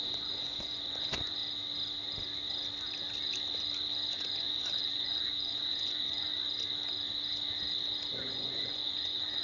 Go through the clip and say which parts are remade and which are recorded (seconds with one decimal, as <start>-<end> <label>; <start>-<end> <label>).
0.0-1.4 remade; 1.4-4.1 recorded; 4.1-6.3 remade; 6.3-8.1 recorded; 8.1-9.4 remade